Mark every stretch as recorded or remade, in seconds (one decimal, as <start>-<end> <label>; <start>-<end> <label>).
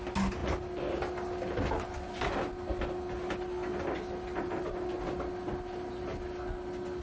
0.0-7.0 recorded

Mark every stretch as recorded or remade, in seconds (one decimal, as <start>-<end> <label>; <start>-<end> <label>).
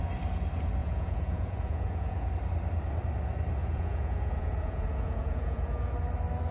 0.0-0.8 recorded; 0.8-2.3 remade; 2.3-3.6 recorded; 3.6-5.9 remade; 5.9-6.5 recorded